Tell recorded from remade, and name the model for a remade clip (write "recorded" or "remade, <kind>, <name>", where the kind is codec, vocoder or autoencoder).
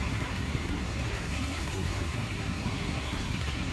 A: remade, codec, SNAC